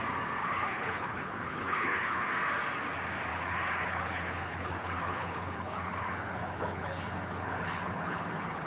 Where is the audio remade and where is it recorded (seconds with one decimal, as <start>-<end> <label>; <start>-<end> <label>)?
0.0-0.4 recorded; 0.4-2.3 remade; 2.3-3.3 recorded; 3.3-8.7 remade